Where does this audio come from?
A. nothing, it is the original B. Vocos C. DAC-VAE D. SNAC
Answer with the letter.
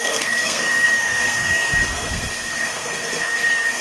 D